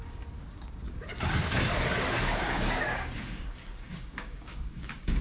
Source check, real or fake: fake